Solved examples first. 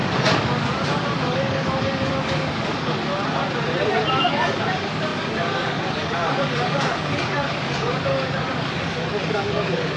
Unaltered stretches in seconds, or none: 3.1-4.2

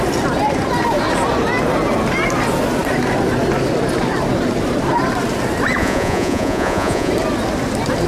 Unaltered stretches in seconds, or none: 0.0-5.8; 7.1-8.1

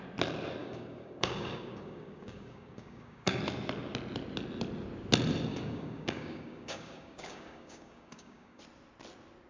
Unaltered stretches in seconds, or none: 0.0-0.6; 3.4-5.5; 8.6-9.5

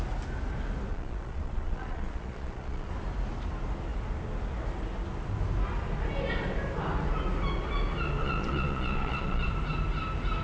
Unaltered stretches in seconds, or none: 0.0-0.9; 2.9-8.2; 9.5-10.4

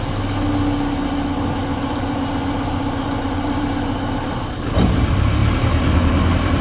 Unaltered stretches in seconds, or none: 0.0-1.7; 5.0-5.4